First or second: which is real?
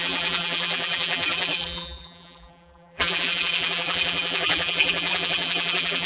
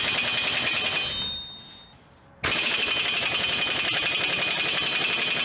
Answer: second